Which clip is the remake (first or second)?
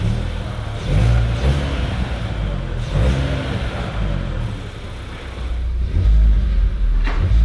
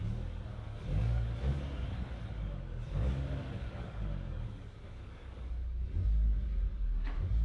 second